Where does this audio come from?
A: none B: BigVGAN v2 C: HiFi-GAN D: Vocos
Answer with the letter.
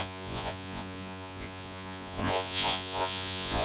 D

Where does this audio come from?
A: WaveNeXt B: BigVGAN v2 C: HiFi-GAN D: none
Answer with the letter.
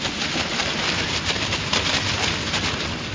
D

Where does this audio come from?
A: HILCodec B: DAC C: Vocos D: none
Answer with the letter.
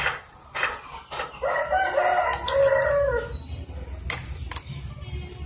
D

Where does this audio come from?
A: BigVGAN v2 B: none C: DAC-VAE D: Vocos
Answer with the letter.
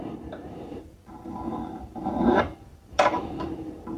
A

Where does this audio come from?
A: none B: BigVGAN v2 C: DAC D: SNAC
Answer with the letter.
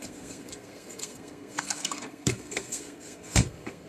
D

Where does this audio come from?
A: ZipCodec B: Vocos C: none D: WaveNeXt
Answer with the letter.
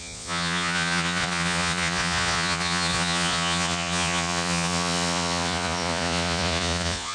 B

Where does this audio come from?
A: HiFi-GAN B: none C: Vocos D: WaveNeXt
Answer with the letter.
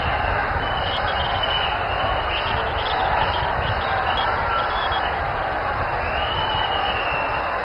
B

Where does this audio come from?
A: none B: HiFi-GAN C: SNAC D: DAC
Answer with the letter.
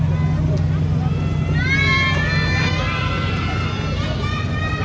A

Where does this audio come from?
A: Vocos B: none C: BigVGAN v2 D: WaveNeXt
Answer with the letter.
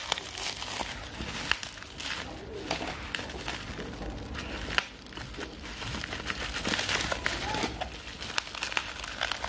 B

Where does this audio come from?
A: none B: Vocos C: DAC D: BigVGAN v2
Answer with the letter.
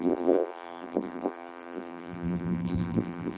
D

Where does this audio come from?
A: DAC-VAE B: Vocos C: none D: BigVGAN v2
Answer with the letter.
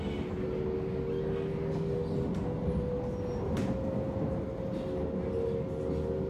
C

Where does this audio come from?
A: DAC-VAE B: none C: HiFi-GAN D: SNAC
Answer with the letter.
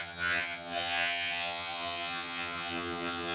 C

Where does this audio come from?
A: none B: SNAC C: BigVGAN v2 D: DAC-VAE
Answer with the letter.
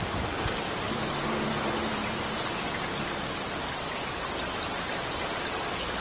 C